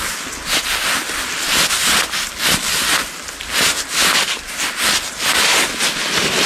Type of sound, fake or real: real